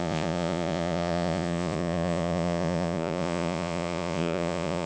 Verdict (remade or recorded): remade